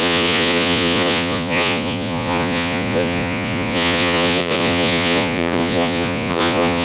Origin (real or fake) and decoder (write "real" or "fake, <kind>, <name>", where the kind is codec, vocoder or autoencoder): fake, vocoder, Vocos